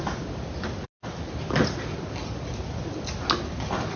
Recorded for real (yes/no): yes